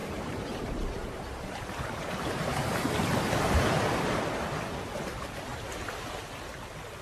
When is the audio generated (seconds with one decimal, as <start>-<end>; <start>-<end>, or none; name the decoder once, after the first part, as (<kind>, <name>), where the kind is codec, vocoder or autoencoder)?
0.0-4.2 (vocoder, BigVGAN v2); 5.5-6.1